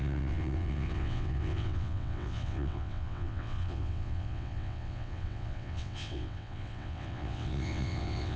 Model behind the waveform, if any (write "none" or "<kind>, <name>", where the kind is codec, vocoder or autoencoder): vocoder, WaveNeXt